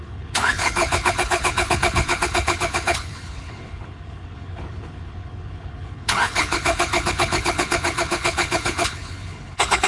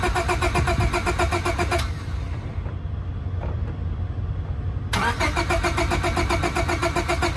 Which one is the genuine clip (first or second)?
second